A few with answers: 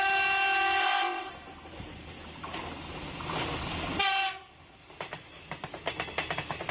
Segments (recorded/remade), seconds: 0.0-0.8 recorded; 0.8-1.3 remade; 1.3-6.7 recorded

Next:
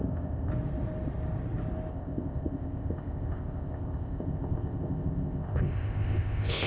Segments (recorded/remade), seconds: 0.0-0.5 remade; 0.5-1.9 recorded; 1.9-6.7 remade

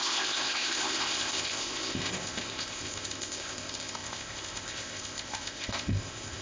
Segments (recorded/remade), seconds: 0.0-6.4 remade

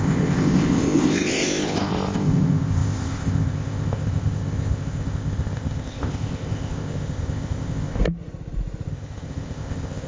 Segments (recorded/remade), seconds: 0.0-8.0 remade; 8.0-8.9 recorded; 8.9-10.1 remade

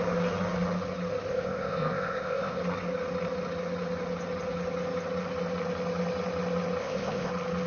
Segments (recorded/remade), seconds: 0.0-1.3 recorded; 1.3-2.6 remade; 2.6-6.8 recorded; 6.8-7.3 remade; 7.3-7.7 recorded

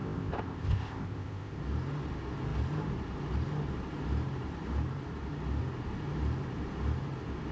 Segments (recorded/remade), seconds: 0.0-1.6 remade; 1.6-7.5 recorded

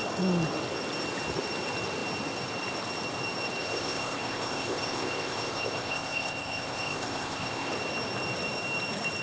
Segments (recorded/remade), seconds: 0.0-3.6 recorded; 3.6-7.7 remade; 7.7-9.2 recorded

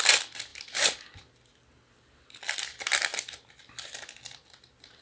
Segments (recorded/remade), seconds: 0.0-5.0 recorded